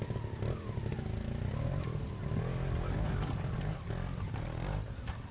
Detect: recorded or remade recorded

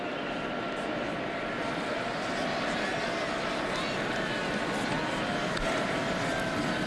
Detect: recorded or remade recorded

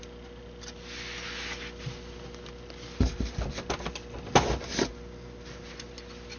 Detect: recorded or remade recorded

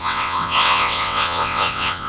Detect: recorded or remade remade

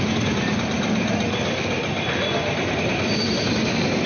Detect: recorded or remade recorded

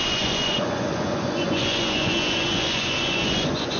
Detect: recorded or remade remade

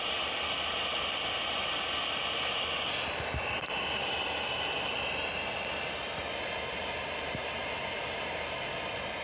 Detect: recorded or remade recorded